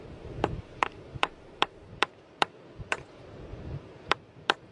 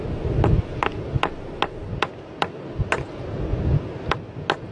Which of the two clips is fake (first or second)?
first